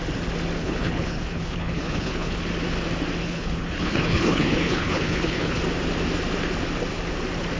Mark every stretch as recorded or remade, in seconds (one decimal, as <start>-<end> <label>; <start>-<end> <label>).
0.0-0.6 recorded; 0.6-2.4 remade; 2.4-3.2 recorded; 3.2-5.6 remade; 5.6-7.6 recorded